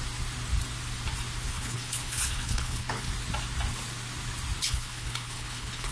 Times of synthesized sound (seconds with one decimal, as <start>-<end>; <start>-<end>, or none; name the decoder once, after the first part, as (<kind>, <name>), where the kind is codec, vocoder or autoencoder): 1.5-3.1 (codec, HILCodec); 4.6-5.9